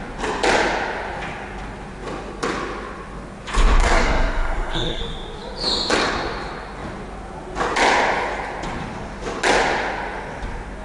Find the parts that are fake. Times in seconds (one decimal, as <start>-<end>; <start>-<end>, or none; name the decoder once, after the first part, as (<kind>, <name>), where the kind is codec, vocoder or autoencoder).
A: 3.8-5.0 (codec, SNAC)